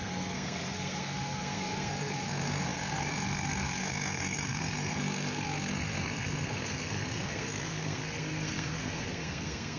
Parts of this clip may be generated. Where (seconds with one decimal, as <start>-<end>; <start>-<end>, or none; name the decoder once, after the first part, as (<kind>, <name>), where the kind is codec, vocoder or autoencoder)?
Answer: 0.0-9.8 (codec, SNAC)